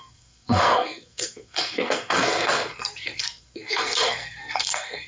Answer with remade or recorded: remade